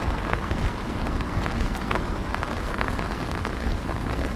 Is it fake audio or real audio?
fake